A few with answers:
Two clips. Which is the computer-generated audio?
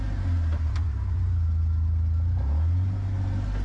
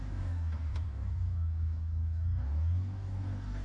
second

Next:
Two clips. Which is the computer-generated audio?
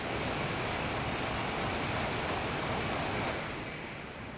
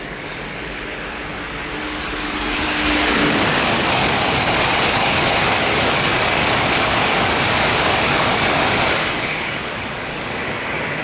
second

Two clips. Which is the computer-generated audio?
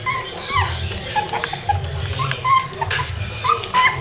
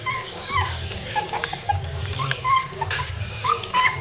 second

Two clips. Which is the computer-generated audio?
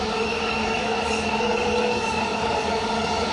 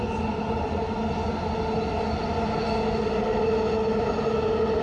first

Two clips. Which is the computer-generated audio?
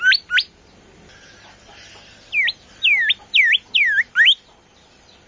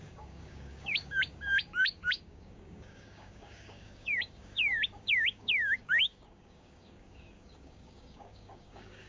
second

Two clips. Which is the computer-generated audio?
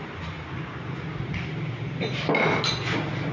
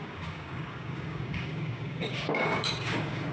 second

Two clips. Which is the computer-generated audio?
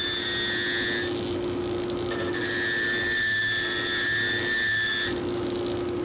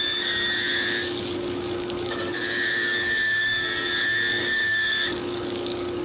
second